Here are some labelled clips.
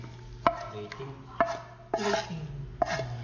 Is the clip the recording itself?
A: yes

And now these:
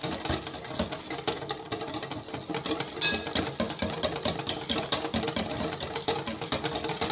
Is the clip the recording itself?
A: yes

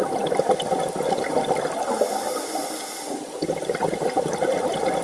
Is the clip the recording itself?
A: yes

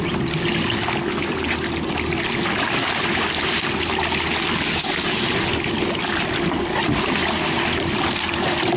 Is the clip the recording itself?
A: yes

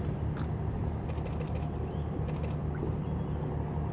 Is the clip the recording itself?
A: yes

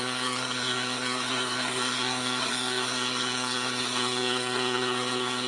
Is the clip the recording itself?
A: no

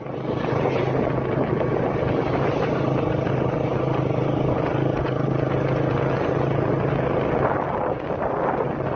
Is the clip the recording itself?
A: yes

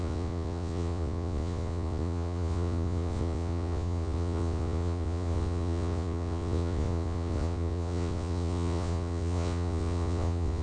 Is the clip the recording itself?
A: no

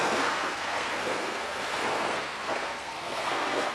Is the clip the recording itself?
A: no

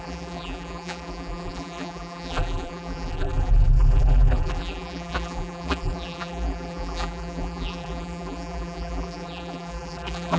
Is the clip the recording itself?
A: no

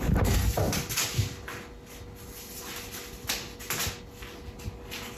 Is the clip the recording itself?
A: yes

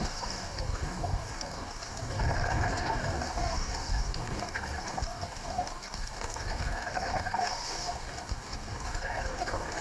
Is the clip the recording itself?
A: no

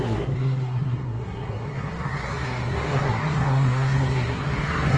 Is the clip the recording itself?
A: no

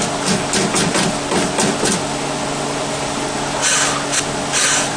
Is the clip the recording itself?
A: yes